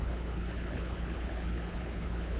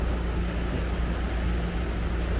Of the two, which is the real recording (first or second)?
second